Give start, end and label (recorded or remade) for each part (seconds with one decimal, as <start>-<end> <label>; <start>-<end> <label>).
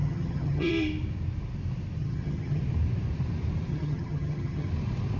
0.0-0.7 remade; 0.7-2.0 recorded; 2.0-2.6 remade; 2.6-3.7 recorded; 3.7-4.7 remade; 4.7-5.2 recorded